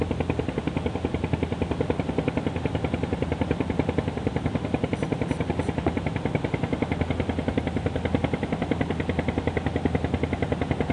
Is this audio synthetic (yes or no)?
no